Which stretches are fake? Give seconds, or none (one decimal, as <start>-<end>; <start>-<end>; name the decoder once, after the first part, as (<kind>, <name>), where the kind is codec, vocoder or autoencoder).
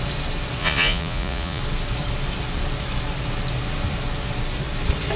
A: 0.6-1.6 (vocoder, Vocos)